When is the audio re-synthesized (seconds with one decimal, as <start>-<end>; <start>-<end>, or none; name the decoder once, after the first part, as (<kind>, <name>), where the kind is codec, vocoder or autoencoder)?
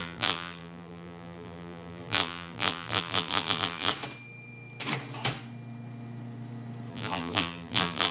0.0-3.9 (vocoder, BigVGAN v2); 6.9-8.1